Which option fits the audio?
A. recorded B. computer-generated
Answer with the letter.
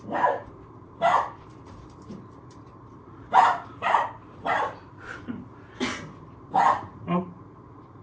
B